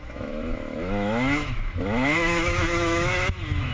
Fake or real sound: fake